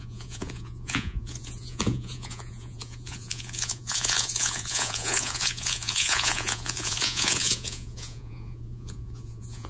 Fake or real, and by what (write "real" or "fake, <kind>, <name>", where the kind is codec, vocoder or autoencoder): fake, vocoder, Vocos